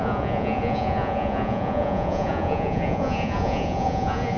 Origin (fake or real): fake